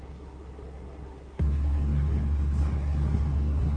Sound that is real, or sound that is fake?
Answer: fake